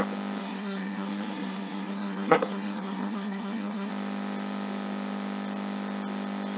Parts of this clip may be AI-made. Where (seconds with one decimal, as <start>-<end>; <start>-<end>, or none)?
0.4-3.9